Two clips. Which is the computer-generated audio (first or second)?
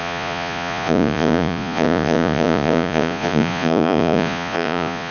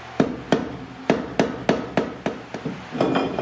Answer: first